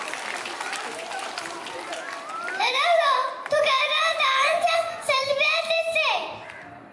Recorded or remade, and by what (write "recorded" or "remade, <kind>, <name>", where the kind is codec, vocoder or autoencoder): remade, vocoder, BigVGAN v2